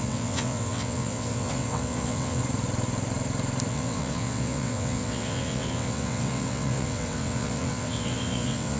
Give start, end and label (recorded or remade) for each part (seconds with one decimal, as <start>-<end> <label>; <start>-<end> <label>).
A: 0.0-2.4 remade; 2.4-3.7 recorded; 3.7-8.8 remade